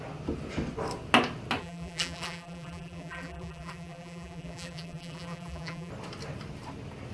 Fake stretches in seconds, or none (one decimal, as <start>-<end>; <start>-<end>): 1.6-5.9